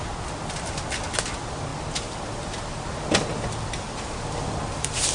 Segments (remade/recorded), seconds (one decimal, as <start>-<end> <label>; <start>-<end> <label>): 0.0-5.1 recorded